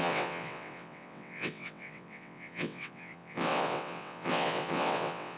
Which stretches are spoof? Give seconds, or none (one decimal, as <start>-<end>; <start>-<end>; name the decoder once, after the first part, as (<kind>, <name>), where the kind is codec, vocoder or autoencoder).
0.0-5.4 (vocoder, WaveNeXt)